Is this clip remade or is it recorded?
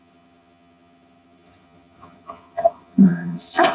remade